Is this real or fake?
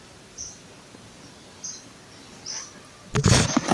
real